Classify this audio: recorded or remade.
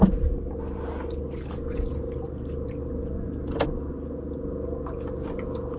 recorded